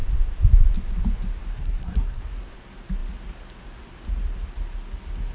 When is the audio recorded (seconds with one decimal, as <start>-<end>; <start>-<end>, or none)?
0.0-1.5; 2.2-5.3